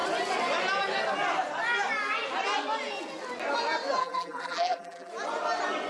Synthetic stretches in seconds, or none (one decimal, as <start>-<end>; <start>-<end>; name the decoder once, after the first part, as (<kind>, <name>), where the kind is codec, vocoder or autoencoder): 4.0-5.1 (vocoder, BigVGAN v2)

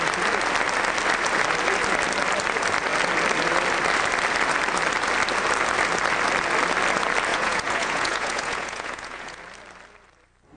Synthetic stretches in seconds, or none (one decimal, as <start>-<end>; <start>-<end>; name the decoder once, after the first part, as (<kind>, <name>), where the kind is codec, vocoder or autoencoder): 7.3-9.4 (vocoder, Vocos)

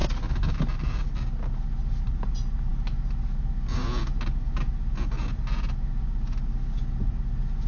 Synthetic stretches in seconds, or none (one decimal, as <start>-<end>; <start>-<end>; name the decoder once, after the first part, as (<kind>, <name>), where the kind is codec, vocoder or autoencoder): none

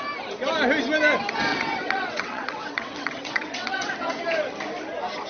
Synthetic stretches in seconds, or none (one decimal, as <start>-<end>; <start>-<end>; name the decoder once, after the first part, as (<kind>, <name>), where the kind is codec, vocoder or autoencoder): 1.5-4.2 (vocoder, WaveNeXt)

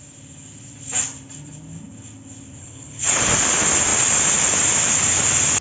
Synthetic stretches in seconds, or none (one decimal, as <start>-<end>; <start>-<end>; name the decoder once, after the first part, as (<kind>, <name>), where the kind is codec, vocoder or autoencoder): 2.6-3.2 (codec, HILCodec)

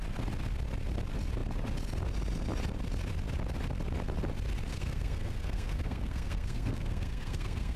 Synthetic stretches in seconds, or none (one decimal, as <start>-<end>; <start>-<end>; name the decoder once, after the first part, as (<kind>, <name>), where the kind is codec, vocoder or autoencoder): 4.7-7.8 (codec, SNAC)

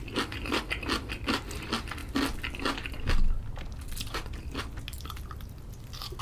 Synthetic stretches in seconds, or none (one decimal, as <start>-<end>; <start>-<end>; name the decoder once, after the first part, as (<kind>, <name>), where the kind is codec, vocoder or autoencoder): none